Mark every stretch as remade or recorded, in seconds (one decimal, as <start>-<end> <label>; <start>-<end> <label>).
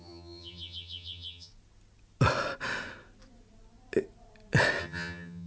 0.0-1.5 remade; 1.5-4.8 recorded; 4.8-5.5 remade